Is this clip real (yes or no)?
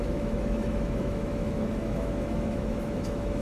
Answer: no